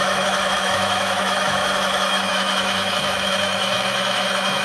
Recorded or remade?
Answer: remade